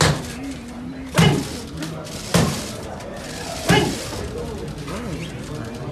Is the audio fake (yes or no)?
no